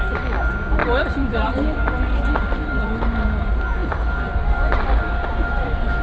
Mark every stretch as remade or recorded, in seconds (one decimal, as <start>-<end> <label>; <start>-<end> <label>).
0.0-0.8 recorded; 0.8-1.4 remade; 1.4-6.0 recorded